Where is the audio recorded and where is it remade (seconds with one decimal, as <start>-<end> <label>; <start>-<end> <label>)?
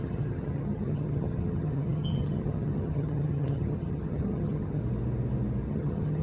0.0-4.8 remade; 4.8-5.7 recorded; 5.7-6.2 remade